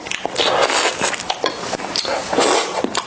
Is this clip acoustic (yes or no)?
yes